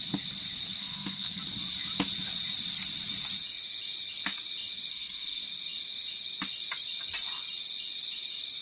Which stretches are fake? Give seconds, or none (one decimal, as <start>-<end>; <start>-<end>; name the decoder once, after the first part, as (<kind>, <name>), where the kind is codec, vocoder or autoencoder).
0.8-1.4 (codec, SNAC); 4.9-5.4